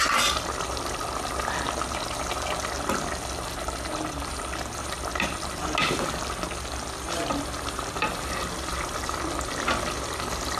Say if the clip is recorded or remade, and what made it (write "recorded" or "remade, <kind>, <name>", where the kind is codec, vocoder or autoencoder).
recorded